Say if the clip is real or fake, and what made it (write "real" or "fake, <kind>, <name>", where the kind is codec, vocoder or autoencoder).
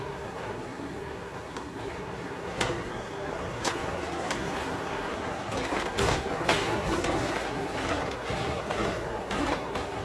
fake, codec, SNAC